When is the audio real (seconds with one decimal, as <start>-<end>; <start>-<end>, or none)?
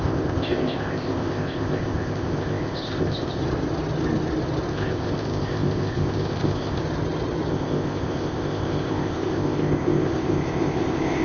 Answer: 3.4-4.7; 6.8-7.5